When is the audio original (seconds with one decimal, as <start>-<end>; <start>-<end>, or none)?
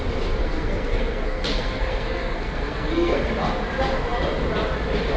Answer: 0.0-0.4; 3.3-5.2